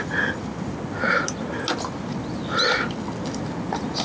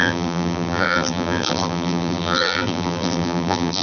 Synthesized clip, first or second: second